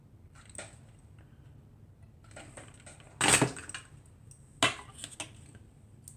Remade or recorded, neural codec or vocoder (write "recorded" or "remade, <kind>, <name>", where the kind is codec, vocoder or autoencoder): recorded